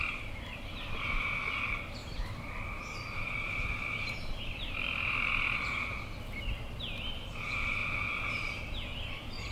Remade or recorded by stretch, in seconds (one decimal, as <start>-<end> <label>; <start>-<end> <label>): 0.0-2.0 recorded; 2.0-5.3 remade; 5.3-9.5 recorded